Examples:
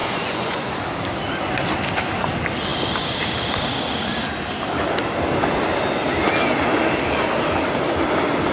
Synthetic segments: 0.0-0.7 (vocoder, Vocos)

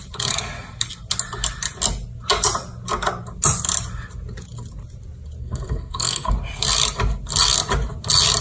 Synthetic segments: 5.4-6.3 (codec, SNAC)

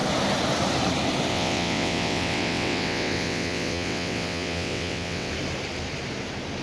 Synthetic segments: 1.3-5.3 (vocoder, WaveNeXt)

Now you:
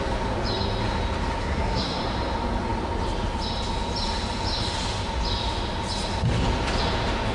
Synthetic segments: 1.4-2.0 (codec, SNAC)

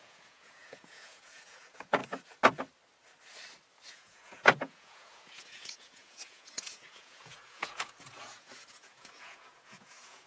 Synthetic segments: 0.0-2.0 (vocoder, Vocos); 3.9-10.3

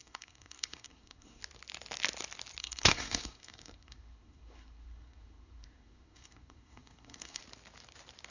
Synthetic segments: 0.0-1.4 (codec, SNAC); 2.6-7.4

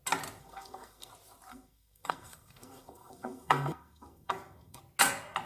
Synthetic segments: 0.4-1.1 (codec, SNAC); 1.5-4.8

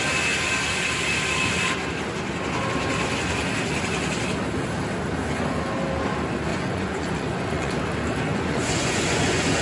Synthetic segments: 6.5-7.7 (vocoder, Vocos); 8.3-9.6